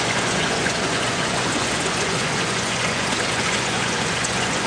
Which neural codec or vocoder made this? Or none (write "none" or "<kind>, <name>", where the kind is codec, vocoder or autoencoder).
vocoder, Vocos